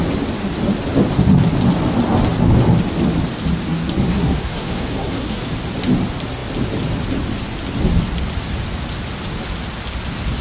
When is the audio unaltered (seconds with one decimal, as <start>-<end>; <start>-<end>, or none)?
0.0-4.1; 5.5-10.4